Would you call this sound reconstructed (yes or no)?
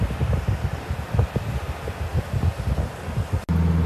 no